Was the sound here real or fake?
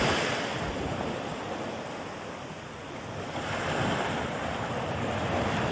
real